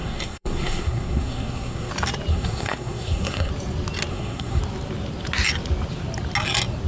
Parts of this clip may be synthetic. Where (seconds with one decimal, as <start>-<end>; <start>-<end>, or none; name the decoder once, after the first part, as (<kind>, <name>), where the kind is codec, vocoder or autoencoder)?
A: 0.0-1.9 (codec, SNAC); 2.3-3.5; 4.1-4.6